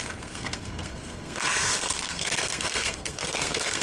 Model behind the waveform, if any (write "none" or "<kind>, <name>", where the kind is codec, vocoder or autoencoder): codec, SNAC